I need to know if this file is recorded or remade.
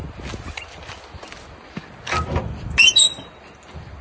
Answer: recorded